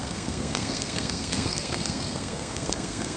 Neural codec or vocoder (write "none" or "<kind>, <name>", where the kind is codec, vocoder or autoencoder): codec, SNAC